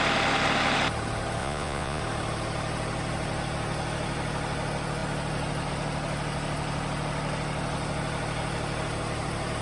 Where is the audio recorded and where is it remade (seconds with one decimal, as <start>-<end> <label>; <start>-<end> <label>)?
0.0-1.4 recorded; 1.4-2.0 remade; 2.0-9.6 recorded

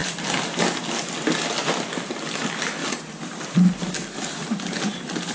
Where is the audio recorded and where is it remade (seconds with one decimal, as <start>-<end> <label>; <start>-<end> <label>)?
0.0-5.3 recorded